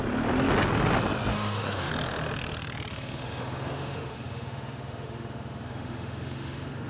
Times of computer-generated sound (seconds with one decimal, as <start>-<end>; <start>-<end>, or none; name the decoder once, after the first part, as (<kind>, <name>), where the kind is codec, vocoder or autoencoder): 1.3-1.9 (autoencoder, DAC-VAE); 2.9-6.9